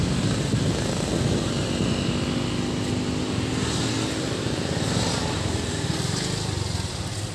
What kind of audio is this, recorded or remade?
recorded